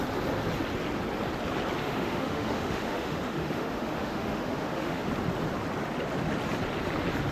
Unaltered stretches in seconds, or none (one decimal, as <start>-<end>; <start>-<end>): 0.0-1.8; 5.0-7.3